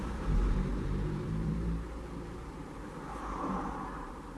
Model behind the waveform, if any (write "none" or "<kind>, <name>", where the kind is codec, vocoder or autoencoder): vocoder, BigVGAN v2